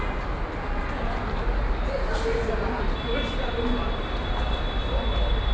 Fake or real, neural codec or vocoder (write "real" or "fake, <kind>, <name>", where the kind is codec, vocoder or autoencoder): real